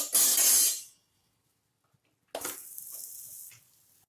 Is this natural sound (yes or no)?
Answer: yes